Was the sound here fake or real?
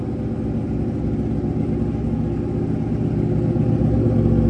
real